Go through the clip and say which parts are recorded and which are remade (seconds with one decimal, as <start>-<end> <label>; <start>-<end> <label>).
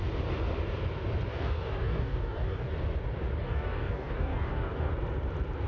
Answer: 0.0-1.3 recorded; 1.3-2.7 remade; 2.7-3.4 recorded; 3.4-4.9 remade; 4.9-5.7 recorded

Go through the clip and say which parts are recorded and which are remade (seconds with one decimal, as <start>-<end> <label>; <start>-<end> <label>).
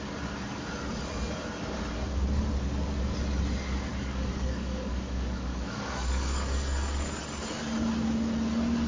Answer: 0.0-3.9 recorded; 3.9-7.2 remade; 7.2-8.9 recorded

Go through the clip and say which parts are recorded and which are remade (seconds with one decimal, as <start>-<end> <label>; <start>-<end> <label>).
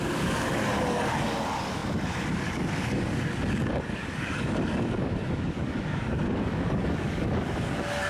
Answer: 0.0-8.1 remade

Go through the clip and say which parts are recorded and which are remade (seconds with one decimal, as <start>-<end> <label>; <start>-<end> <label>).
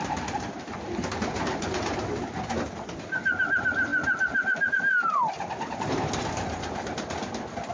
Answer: 0.0-7.7 recorded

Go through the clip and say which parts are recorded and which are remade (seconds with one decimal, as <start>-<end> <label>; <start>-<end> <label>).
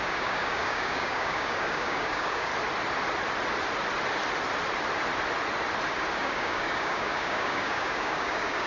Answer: 0.0-2.5 remade; 2.5-6.1 recorded; 6.1-8.7 remade